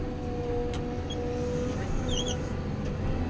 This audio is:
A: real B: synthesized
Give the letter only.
A